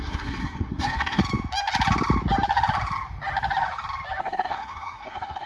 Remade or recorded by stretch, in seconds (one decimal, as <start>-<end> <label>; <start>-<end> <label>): 0.0-1.2 remade; 1.2-4.2 recorded; 4.2-5.5 remade